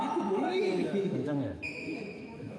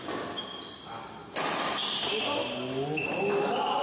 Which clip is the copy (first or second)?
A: first